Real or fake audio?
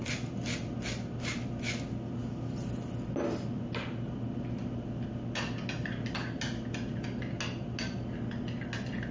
real